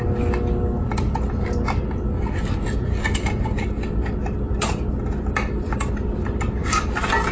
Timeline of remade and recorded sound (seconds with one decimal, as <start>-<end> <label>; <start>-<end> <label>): 0.0-7.3 recorded